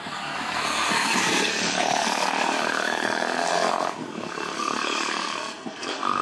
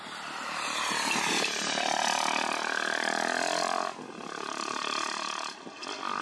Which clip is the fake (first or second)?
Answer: first